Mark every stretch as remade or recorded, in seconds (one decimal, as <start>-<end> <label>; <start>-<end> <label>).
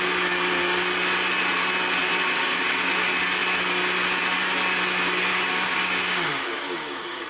0.0-2.4 recorded; 2.4-2.9 remade; 2.9-5.3 recorded; 5.3-7.3 remade